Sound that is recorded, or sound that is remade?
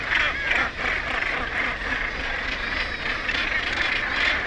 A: recorded